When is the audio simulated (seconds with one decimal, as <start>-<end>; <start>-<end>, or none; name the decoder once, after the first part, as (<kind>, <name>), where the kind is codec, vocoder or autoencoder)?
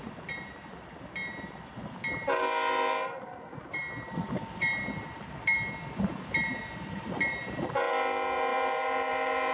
none